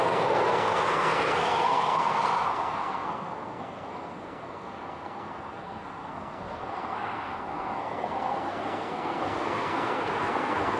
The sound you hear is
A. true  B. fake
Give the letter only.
B